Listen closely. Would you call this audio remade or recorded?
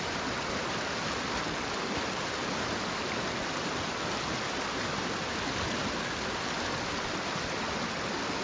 recorded